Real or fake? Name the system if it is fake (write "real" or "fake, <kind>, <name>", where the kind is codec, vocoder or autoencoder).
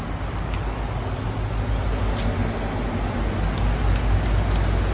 real